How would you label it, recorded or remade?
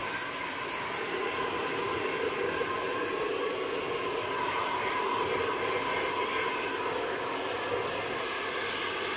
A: recorded